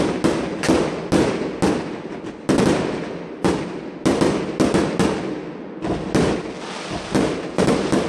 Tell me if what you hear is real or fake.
real